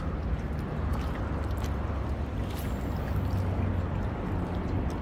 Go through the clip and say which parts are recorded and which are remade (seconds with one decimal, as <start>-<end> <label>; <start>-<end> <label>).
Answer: 0.0-5.0 recorded